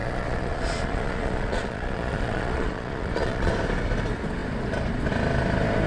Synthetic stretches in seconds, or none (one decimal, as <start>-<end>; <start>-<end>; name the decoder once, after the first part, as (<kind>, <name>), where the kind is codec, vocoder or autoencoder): 0.0-3.5 (vocoder, Vocos)